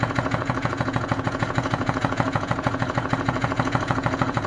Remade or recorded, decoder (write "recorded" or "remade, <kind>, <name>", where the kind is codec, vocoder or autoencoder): remade, vocoder, Vocos